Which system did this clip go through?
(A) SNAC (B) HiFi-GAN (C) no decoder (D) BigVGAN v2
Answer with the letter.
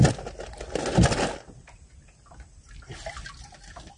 C